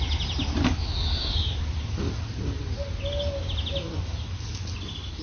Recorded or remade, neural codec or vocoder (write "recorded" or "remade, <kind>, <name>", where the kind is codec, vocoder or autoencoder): recorded